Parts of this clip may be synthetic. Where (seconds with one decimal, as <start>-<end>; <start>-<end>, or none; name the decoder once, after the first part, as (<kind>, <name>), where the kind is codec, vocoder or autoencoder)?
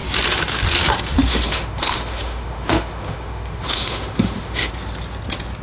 1.3-4.7 (autoencoder, DAC-VAE)